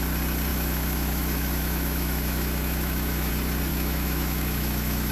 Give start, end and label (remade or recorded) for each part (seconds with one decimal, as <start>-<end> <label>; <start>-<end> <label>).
0.0-0.5 recorded; 0.5-3.3 remade; 3.3-3.7 recorded; 3.7-5.1 remade